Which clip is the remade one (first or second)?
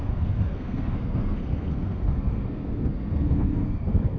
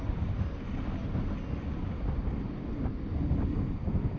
first